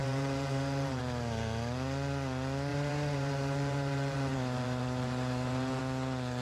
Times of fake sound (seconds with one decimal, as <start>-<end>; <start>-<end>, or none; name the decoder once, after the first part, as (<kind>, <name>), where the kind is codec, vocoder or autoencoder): 0.0-1.0 (vocoder, BigVGAN v2); 2.7-5.8